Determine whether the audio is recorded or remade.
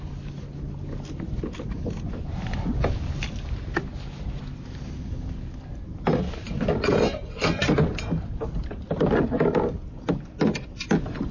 recorded